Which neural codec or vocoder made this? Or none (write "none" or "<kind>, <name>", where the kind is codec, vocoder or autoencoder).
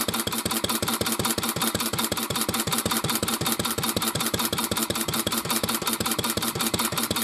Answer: none